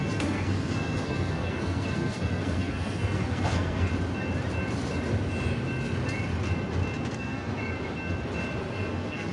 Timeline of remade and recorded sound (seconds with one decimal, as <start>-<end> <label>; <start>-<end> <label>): 0.0-3.9 remade; 3.9-7.1 recorded; 7.1-7.5 remade; 7.5-8.9 recorded; 8.9-9.3 remade